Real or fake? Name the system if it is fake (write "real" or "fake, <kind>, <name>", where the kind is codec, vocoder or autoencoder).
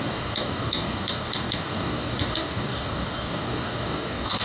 fake, codec, DAC